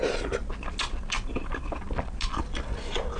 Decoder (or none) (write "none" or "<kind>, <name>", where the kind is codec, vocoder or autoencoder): none